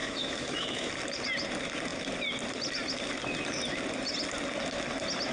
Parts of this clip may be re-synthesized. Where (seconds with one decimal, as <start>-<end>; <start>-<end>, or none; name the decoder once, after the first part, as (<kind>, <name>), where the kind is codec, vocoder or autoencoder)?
0.0-0.9 (autoencoder, DAC-VAE)